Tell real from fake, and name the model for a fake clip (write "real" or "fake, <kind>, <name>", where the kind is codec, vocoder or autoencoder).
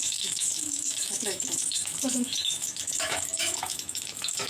fake, autoencoder, DAC-VAE